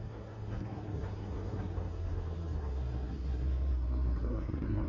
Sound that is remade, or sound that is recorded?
remade